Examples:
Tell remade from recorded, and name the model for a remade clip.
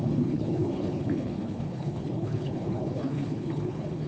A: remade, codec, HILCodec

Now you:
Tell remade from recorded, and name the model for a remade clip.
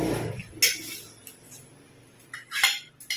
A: recorded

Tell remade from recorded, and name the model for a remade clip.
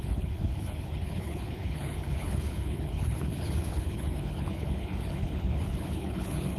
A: remade, codec, HILCodec